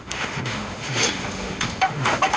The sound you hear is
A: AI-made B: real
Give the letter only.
A